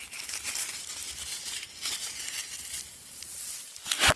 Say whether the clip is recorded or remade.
recorded